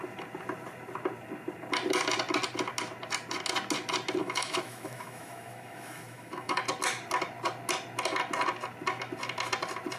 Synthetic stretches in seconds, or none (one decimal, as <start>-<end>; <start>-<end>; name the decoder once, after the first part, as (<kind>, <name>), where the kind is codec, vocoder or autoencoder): 4.2-6.6 (autoencoder, DAC-VAE)